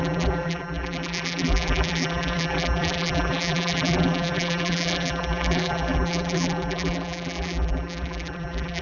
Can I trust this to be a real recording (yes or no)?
no